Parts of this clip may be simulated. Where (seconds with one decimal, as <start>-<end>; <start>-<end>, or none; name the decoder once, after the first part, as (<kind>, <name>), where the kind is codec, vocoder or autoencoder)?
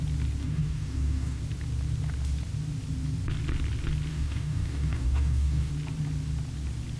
0.4-1.4 (codec, DAC); 4.1-5.7